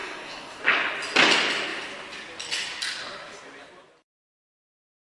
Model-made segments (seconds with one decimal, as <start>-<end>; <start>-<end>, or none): 0.0-0.6